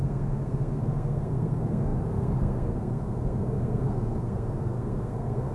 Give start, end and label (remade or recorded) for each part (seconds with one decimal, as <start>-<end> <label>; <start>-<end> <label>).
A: 0.0-5.5 remade